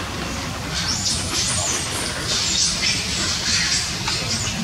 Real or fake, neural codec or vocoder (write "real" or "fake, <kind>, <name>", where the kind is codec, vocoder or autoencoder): real